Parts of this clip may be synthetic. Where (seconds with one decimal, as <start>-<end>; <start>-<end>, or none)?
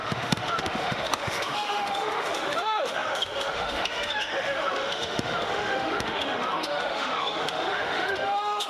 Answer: 0.0-8.7